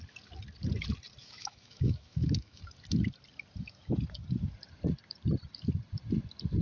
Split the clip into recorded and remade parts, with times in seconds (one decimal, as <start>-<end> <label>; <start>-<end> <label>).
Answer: 0.0-1.2 recorded; 1.2-2.6 remade; 2.6-6.6 recorded